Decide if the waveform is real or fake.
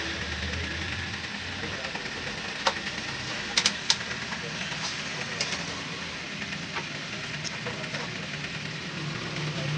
real